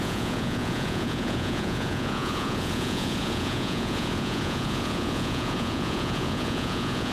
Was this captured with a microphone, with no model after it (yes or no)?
no